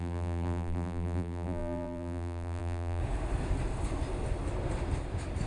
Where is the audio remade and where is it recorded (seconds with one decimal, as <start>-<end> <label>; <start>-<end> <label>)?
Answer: 0.0-3.0 remade; 3.0-5.5 recorded